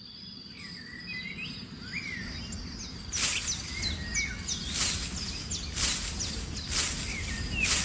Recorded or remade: recorded